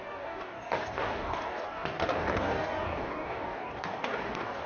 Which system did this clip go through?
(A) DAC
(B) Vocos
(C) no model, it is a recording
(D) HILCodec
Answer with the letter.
A